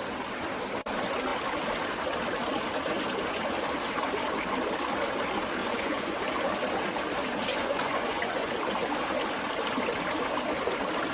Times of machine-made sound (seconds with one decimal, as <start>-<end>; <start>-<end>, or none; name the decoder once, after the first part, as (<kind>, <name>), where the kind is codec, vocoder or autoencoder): 5.6-6.2 (vocoder, Vocos); 7.5-8.5